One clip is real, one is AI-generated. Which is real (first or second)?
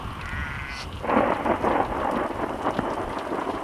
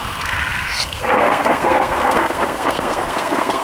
first